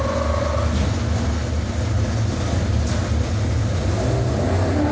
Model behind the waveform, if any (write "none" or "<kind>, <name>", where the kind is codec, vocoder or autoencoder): none